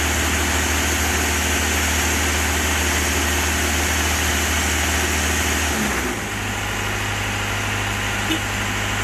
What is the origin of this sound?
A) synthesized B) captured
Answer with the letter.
B